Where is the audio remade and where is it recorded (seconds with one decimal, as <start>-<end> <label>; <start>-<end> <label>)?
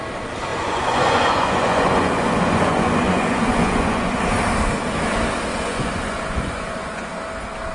0.0-0.5 recorded; 0.5-4.2 remade; 4.2-5.5 recorded; 5.5-7.2 remade; 7.2-7.7 recorded